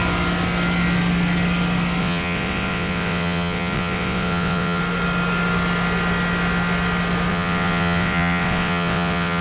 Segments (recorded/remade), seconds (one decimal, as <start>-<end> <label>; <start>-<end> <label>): 0.0-2.0 recorded; 2.0-4.8 remade; 4.8-7.3 recorded; 7.3-9.4 remade